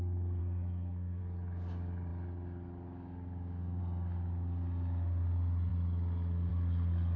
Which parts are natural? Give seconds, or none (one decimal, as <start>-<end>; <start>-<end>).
0.0-0.4; 1.2-7.2